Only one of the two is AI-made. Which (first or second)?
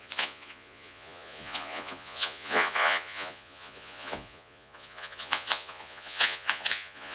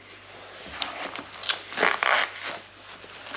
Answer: first